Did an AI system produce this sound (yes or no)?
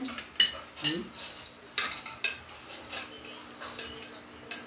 no